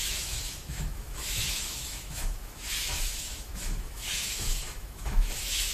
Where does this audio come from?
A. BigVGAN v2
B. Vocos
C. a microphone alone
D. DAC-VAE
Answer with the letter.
D